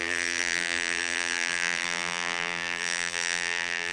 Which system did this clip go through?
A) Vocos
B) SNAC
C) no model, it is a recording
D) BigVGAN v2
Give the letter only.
D